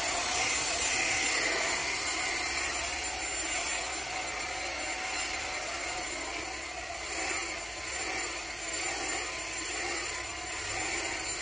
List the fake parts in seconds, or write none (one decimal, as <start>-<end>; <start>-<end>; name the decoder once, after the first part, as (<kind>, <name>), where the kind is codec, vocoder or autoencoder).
none